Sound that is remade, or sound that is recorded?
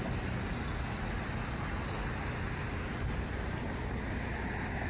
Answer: recorded